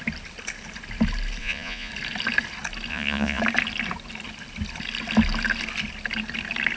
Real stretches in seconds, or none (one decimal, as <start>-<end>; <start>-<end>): 0.0-1.4; 1.9-2.9; 3.4-6.8